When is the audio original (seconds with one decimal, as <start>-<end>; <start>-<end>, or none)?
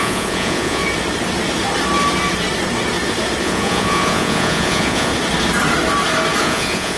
0.8-3.4; 5.1-6.4